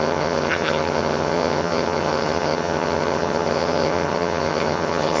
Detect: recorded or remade remade